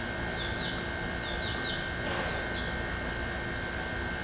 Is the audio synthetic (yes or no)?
no